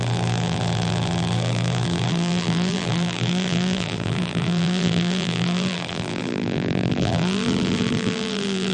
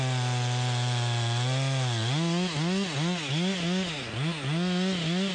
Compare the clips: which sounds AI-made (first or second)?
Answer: first